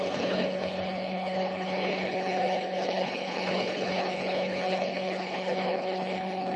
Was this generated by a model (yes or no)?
yes